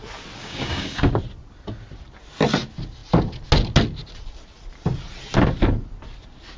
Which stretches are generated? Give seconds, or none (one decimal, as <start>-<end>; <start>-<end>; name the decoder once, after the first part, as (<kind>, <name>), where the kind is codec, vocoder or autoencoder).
0.4-1.1 (codec, DAC)